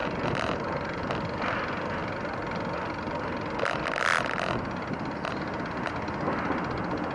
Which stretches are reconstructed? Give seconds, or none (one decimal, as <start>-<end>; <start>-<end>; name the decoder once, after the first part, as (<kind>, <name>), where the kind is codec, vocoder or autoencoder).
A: 0.0-1.0 (vocoder, BigVGAN v2)